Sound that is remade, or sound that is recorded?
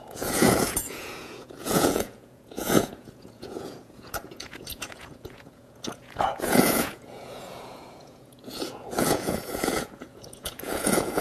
remade